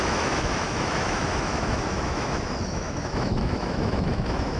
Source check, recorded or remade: remade